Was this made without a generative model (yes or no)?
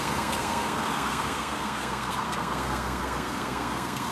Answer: no